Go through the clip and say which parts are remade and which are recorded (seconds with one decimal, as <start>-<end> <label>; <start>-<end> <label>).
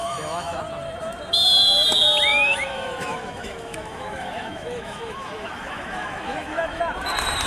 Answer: 0.0-0.6 remade; 0.6-2.3 recorded; 2.3-6.8 remade; 6.8-7.5 recorded